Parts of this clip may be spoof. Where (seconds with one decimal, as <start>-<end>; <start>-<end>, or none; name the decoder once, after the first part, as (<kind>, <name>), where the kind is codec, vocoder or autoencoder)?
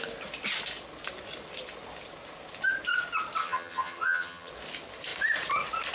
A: 3.4-4.5 (vocoder, HiFi-GAN)